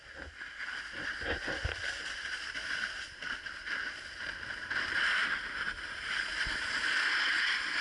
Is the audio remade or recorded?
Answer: recorded